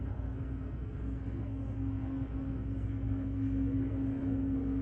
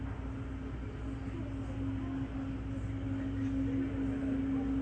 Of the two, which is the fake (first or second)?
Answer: first